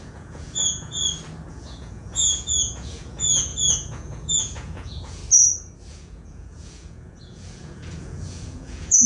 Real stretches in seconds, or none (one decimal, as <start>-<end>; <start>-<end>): 1.0-1.5; 5.2-5.9